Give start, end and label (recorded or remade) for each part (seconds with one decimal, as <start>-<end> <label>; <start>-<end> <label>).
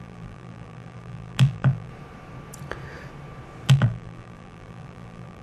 0.0-1.9 remade; 1.9-3.7 recorded; 3.7-5.4 remade